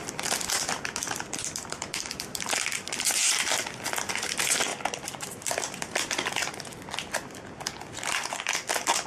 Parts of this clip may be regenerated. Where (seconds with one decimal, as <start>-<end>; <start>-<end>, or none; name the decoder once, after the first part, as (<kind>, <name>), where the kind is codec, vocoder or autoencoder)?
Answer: none